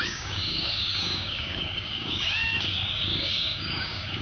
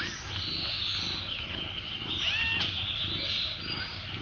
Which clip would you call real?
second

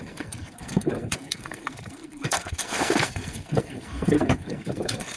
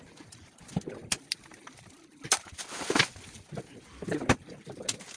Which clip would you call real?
second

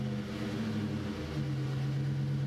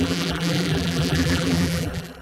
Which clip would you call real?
first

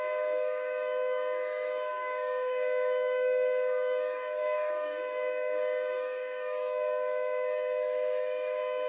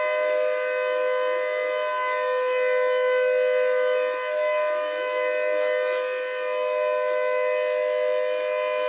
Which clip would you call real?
second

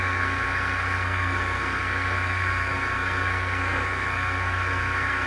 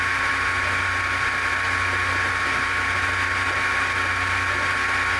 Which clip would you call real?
second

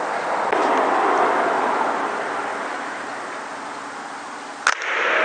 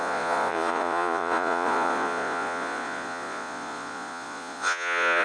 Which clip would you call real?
first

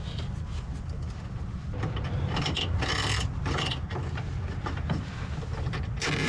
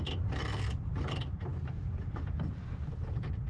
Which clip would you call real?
first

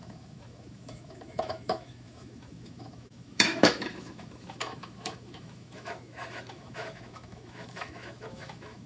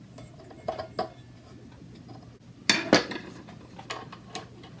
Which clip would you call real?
second